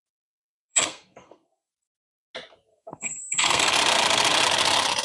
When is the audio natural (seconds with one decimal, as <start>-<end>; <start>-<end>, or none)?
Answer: 0.0-0.7; 1.7-2.7; 3.7-5.0